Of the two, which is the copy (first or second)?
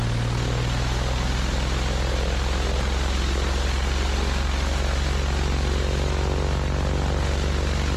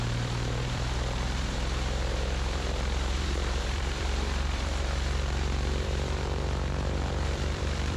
second